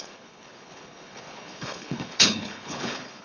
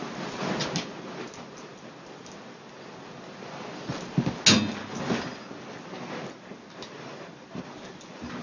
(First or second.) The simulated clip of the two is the first